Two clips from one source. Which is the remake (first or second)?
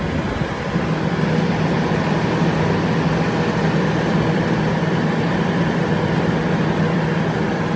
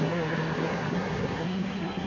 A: second